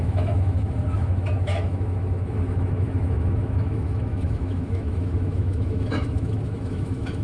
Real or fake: fake